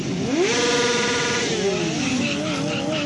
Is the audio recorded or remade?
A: recorded